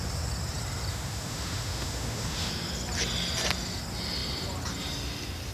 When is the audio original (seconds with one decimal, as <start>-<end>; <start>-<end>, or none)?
0.0-0.9; 2.5-5.5